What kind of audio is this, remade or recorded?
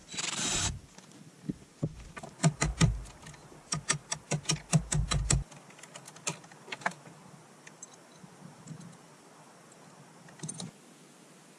recorded